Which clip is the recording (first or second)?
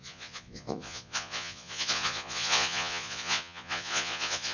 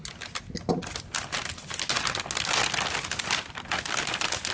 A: second